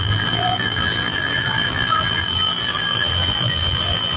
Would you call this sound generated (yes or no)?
yes